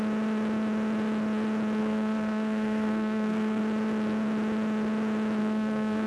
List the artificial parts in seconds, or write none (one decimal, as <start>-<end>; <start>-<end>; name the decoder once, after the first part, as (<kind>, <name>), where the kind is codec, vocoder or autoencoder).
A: 1.8-3.6 (codec, SNAC); 5.4-6.1